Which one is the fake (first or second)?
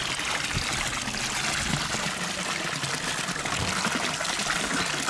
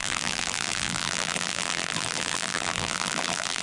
second